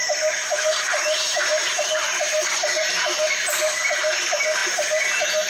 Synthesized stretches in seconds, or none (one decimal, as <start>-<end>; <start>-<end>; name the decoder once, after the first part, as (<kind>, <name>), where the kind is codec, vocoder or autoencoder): 0.0-5.5 (vocoder, BigVGAN v2)